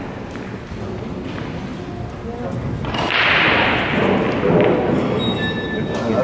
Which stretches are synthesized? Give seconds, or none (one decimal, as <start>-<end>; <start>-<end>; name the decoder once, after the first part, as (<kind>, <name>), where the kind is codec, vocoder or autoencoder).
none